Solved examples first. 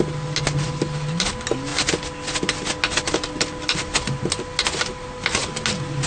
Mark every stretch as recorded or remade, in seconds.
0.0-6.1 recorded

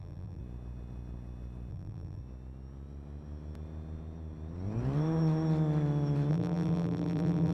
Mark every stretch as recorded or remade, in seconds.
0.0-0.4 remade; 0.4-1.7 recorded; 1.7-2.2 remade; 2.2-6.3 recorded; 6.3-7.5 remade

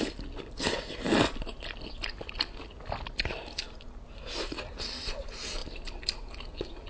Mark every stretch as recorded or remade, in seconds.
0.0-6.9 recorded

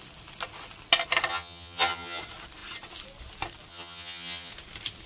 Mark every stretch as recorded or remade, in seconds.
0.0-1.3 recorded; 1.3-2.2 remade; 2.2-3.7 recorded; 3.7-4.5 remade; 4.5-5.1 recorded

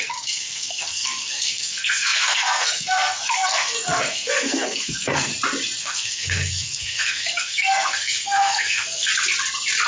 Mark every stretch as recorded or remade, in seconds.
0.0-5.3 remade; 5.3-5.8 recorded; 5.8-9.1 remade; 9.1-9.9 recorded

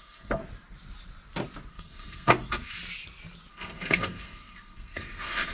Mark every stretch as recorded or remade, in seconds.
0.0-0.4 remade; 0.4-1.7 recorded; 1.7-2.8 remade; 2.8-3.5 recorded; 3.5-5.5 remade